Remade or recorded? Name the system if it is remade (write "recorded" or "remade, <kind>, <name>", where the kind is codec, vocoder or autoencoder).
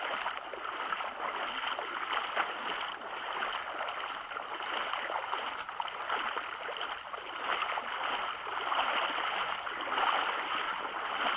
recorded